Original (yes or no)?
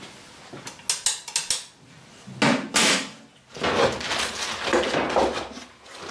yes